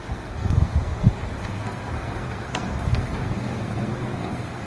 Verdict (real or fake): fake